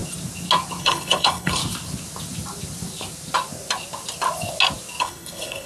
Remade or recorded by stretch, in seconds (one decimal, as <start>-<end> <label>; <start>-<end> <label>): 0.0-0.8 recorded; 0.8-1.6 remade; 1.6-5.0 recorded; 5.0-5.7 remade